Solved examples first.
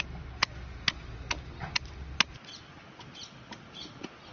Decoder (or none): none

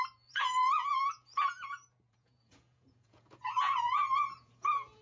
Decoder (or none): vocoder, Vocos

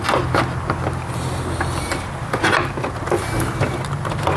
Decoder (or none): none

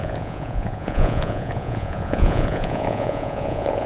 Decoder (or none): vocoder, Vocos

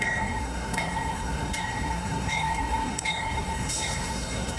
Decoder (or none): codec, SNAC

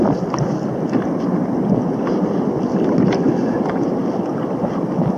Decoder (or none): none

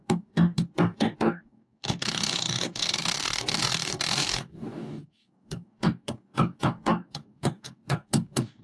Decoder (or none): codec, DAC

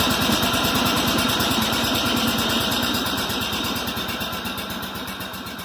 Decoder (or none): vocoder, BigVGAN v2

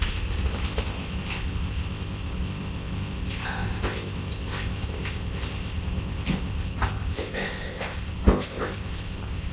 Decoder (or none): codec, ZipCodec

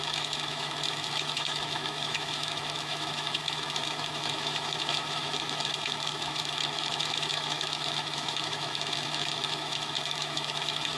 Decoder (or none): autoencoder, DAC-VAE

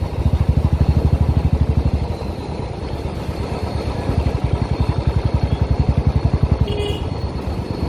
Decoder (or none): none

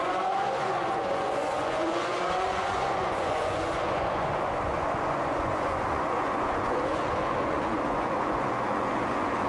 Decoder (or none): vocoder, Vocos